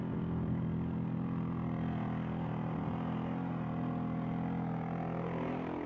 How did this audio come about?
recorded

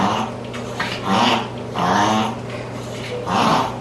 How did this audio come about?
remade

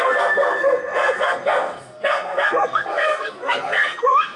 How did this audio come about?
remade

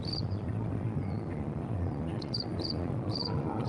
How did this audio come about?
remade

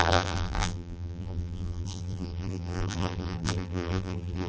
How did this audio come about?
remade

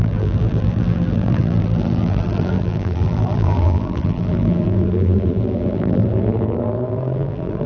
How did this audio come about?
remade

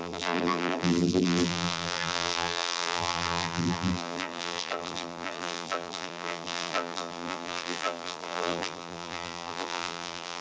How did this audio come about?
remade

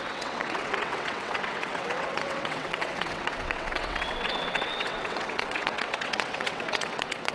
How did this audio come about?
remade